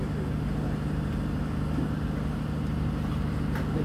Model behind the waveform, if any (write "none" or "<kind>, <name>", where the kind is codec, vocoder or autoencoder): none